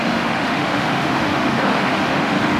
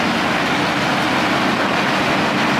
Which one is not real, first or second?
first